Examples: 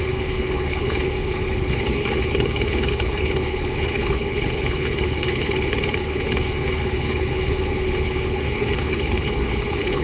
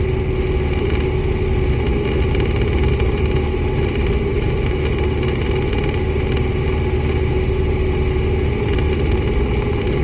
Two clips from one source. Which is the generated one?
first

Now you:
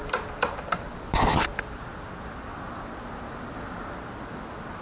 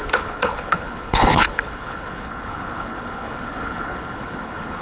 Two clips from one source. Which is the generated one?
second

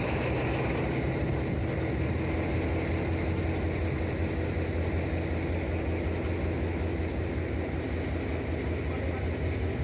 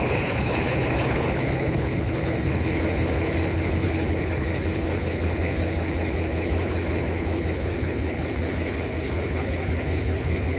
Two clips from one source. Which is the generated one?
second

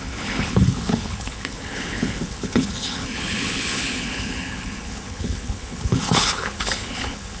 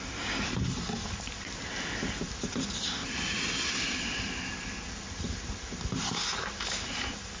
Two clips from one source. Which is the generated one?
first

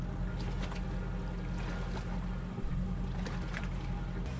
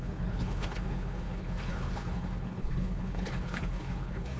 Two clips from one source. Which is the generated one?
second